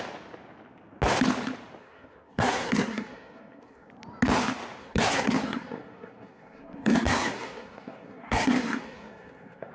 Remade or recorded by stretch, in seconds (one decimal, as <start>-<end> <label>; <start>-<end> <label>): 0.0-1.8 recorded; 1.8-3.9 remade; 3.9-4.8 recorded; 4.8-9.7 remade